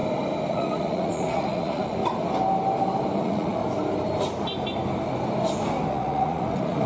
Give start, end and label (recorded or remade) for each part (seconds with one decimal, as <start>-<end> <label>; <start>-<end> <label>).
0.0-0.5 recorded; 0.5-2.0 remade; 2.0-3.2 recorded; 3.2-3.6 remade; 3.6-5.9 recorded; 5.9-6.9 remade